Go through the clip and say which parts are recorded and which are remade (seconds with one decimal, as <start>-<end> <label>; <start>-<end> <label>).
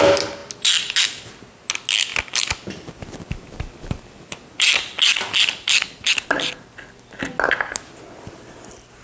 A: 0.0-9.0 recorded